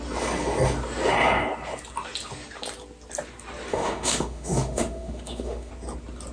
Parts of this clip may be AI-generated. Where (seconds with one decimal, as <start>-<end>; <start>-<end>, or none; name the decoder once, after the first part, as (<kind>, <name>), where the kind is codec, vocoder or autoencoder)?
3.7-5.7 (autoencoder, DAC-VAE)